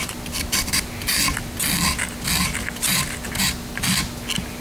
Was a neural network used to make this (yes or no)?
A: no